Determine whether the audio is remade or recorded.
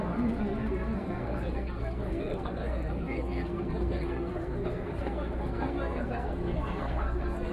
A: remade